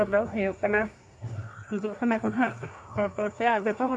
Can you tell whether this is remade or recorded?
remade